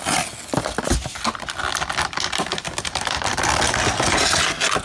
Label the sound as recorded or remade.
recorded